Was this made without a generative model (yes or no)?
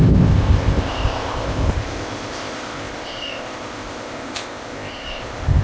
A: no